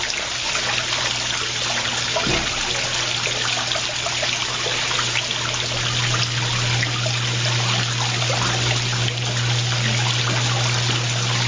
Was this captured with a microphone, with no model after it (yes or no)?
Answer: yes